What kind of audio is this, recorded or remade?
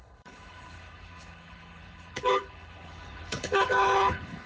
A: remade